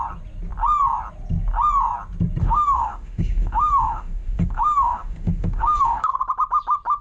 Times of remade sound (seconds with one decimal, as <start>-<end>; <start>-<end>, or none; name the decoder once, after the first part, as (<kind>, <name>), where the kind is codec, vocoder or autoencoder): 2.4-6.2 (autoencoder, DAC-VAE)